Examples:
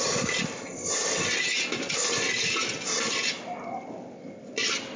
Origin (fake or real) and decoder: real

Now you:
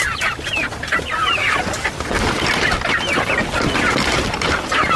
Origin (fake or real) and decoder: real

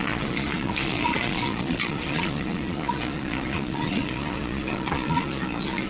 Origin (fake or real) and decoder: fake, vocoder, Vocos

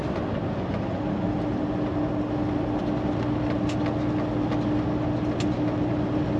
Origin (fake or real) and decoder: real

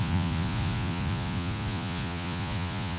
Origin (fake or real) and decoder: fake, vocoder, Vocos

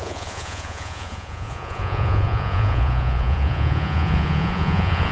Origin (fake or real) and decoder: fake, vocoder, Vocos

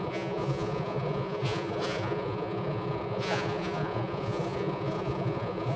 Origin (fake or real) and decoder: fake, vocoder, Vocos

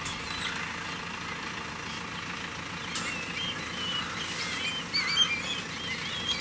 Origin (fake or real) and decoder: real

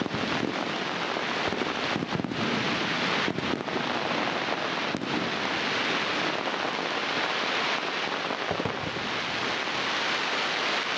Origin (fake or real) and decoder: real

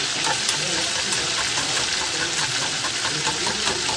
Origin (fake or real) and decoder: real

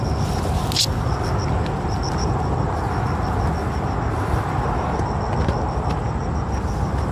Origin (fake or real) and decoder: real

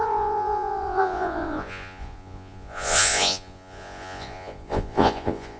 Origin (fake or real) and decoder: fake, vocoder, Vocos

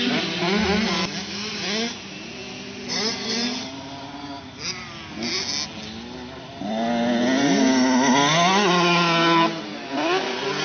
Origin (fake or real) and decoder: real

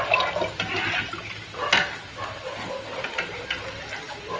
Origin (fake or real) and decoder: real